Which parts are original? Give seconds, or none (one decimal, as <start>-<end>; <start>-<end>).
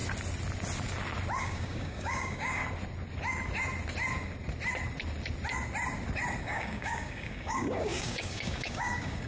0.0-1.4; 2.6-6.4